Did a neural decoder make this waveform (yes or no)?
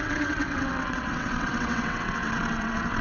yes